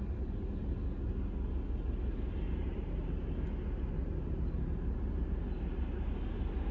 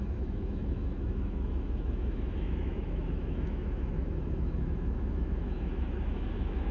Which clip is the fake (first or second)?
second